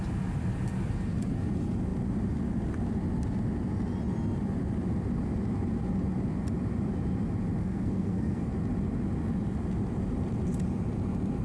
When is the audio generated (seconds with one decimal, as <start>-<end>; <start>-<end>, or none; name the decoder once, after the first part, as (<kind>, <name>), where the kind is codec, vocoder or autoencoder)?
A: 7.6-8.5 (codec, SNAC)